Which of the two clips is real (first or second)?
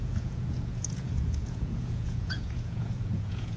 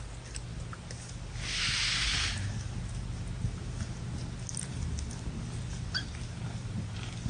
second